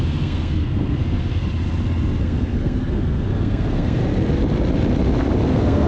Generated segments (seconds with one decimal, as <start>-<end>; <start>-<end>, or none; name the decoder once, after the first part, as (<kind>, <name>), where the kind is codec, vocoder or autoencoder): 0.0-1.4 (codec, SNAC); 2.2-4.0; 5.5-5.9